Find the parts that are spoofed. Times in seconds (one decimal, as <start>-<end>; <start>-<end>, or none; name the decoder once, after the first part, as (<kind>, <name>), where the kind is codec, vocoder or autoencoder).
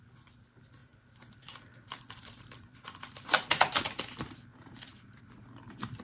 0.8-3.3 (vocoder, BigVGAN v2); 4.5-5.2